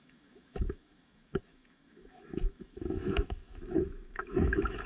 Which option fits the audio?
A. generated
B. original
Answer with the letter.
A